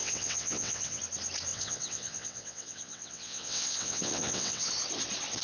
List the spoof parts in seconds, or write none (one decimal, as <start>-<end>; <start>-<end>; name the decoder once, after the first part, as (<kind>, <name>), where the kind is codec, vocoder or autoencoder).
0.0-1.0 (vocoder, WaveNeXt); 1.5-4.7